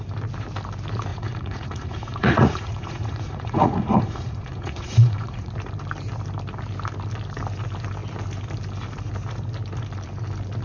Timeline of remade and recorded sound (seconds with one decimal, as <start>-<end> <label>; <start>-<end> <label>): 0.0-1.1 recorded; 1.1-5.5 remade; 5.5-10.6 recorded